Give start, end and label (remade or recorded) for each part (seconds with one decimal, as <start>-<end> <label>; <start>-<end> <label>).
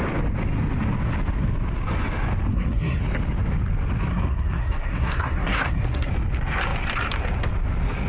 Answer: 0.0-2.5 recorded; 2.5-3.0 remade; 3.0-4.1 recorded; 4.1-6.1 remade; 6.1-8.1 recorded